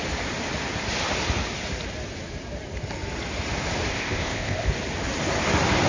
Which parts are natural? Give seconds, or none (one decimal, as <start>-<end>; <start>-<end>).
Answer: 0.0-3.9; 4.7-5.9